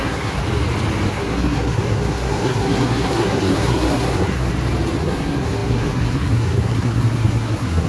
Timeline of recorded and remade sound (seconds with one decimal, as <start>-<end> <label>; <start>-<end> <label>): 0.0-0.4 remade; 0.4-1.1 recorded; 1.1-4.5 remade; 4.5-5.0 recorded; 5.0-7.9 remade